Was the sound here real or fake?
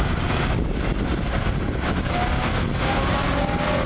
real